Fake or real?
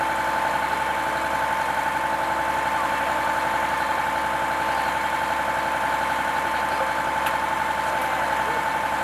real